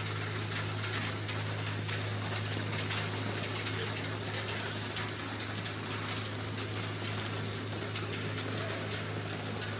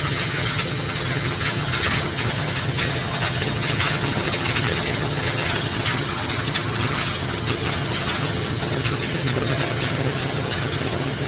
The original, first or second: first